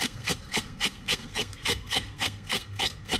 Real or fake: fake